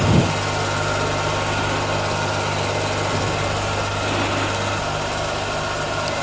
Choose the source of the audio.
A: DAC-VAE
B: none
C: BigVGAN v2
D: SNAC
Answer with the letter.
B